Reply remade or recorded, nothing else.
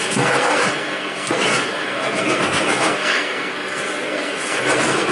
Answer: remade